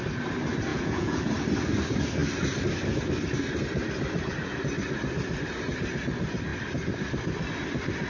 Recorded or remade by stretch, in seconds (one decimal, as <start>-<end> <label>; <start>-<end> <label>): 0.0-0.7 recorded; 0.7-1.2 remade; 1.2-8.1 recorded

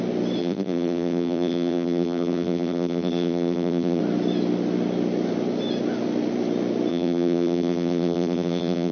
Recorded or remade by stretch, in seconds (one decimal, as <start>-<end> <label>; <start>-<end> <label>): 0.0-0.4 recorded; 0.4-4.0 remade; 4.0-6.9 recorded; 6.9-8.9 remade

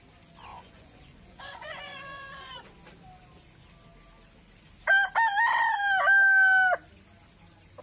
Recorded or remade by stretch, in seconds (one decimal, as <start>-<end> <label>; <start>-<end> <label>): 0.0-0.5 recorded; 0.5-2.6 remade; 2.6-7.8 recorded

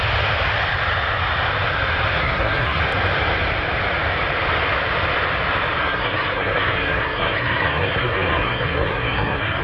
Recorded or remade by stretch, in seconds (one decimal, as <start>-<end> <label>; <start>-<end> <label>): 0.0-2.2 recorded; 2.2-2.8 remade; 2.8-5.8 recorded; 5.8-9.6 remade

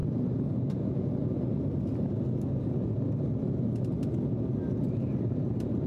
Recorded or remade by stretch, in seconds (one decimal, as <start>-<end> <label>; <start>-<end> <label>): 0.0-5.9 recorded

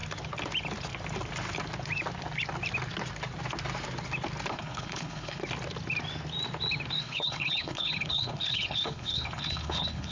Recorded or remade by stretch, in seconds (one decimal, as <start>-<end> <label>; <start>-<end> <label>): 0.0-4.5 recorded; 4.5-5.4 remade; 5.4-7.0 recorded; 7.0-10.1 remade

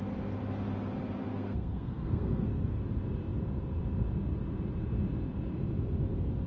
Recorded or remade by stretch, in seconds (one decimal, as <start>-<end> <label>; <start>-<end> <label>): 0.0-1.3 recorded; 1.3-2.8 remade; 2.8-6.5 recorded

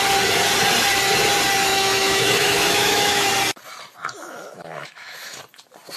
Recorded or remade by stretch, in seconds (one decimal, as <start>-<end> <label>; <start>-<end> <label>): 0.0-1.7 recorded; 1.7-3.3 remade; 3.3-4.0 recorded; 4.0-5.4 remade; 5.4-6.0 recorded